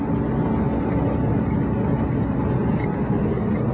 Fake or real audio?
real